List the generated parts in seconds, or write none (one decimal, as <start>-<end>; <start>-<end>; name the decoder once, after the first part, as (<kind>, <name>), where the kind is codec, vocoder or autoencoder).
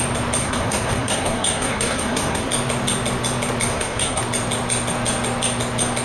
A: 0.4-2.5 (codec, SNAC); 3.7-4.2